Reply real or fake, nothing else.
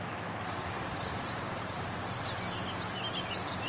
real